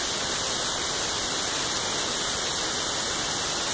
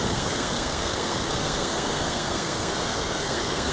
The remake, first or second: second